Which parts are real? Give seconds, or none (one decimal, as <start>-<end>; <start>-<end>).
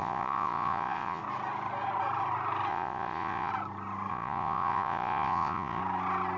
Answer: 1.2-2.7; 3.5-4.1; 5.8-6.4